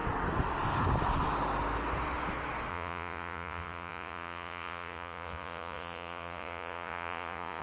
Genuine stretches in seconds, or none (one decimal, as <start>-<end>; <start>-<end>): 0.0-2.7